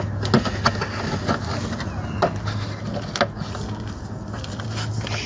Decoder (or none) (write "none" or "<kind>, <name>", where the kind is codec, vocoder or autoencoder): none